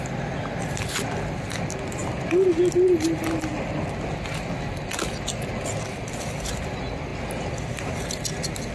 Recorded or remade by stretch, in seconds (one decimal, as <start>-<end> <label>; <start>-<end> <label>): 0.0-8.7 recorded